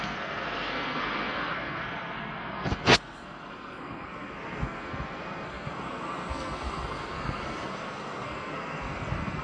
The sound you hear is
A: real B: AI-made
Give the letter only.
B